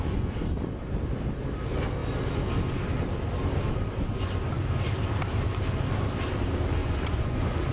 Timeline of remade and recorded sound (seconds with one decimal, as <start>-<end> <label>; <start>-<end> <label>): 0.0-0.5 remade; 0.5-6.8 recorded; 6.8-7.7 remade